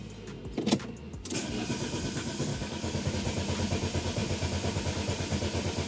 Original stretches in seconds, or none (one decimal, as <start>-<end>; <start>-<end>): 0.0-2.5; 3.1-5.9